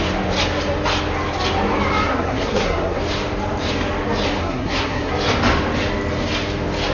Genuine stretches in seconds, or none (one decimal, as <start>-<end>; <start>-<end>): 0.0-2.1; 3.0-4.4; 5.1-6.9